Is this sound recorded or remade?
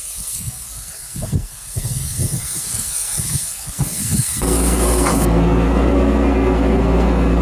remade